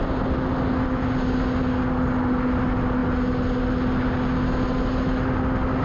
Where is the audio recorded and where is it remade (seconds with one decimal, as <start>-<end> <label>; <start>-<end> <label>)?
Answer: 0.0-5.8 recorded